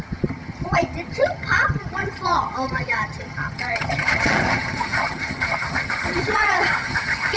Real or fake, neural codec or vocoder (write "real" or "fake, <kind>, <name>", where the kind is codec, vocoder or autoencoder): fake, vocoder, HiFi-GAN